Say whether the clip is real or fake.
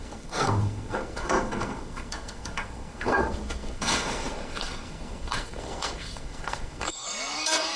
fake